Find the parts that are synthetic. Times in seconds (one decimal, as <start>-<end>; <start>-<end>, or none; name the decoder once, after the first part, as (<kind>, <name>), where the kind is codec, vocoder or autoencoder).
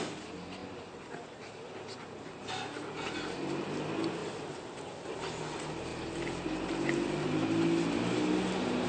0.6-2.5 (vocoder, BigVGAN v2)